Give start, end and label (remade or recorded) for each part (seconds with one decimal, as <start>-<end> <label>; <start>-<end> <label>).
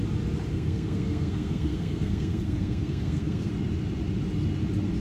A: 0.0-0.5 recorded; 0.5-3.5 remade; 3.5-5.0 recorded